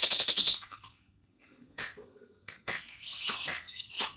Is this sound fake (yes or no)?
yes